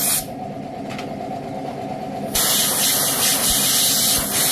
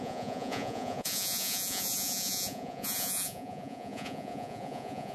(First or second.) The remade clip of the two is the second